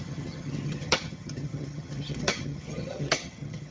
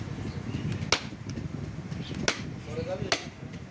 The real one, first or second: second